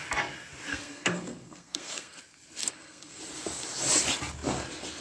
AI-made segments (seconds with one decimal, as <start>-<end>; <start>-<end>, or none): 0.7-2.2; 2.6-3.2

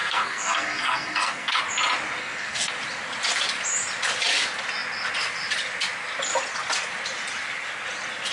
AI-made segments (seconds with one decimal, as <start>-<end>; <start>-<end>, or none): 0.0-1.6; 2.2-2.7